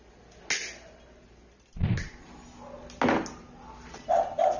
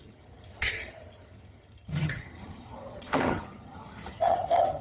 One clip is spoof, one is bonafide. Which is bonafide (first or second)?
first